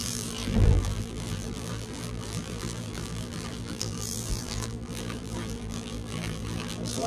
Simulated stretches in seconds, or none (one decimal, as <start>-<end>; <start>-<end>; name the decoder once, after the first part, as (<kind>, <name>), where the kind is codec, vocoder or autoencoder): 0.0-7.1 (vocoder, BigVGAN v2)